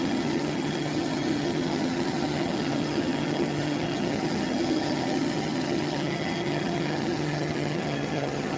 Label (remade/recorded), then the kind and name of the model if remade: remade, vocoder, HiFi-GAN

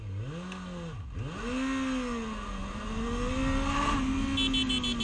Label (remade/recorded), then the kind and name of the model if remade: recorded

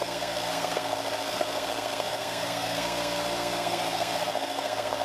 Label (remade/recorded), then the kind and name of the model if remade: remade, codec, SNAC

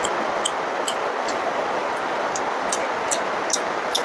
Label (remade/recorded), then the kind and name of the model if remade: recorded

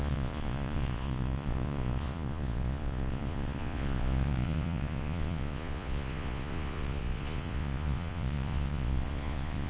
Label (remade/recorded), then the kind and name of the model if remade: remade, vocoder, Vocos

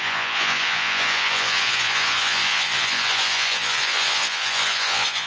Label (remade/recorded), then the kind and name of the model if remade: remade, vocoder, Vocos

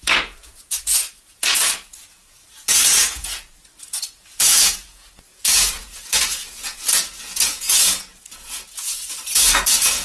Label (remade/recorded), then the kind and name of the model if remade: remade, vocoder, Vocos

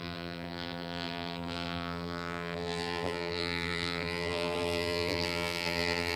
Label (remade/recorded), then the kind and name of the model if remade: remade, vocoder, BigVGAN v2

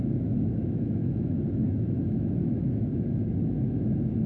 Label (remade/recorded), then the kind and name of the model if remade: remade, autoencoder, DAC-VAE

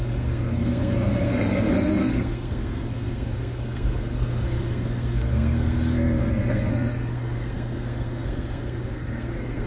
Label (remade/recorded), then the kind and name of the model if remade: remade, codec, SNAC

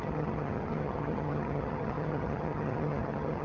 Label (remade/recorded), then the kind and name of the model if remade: remade, vocoder, HiFi-GAN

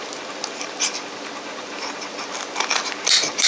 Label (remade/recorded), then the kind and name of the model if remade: recorded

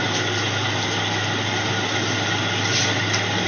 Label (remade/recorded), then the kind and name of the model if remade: recorded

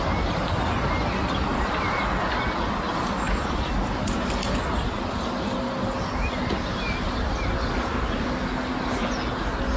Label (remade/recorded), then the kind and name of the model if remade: recorded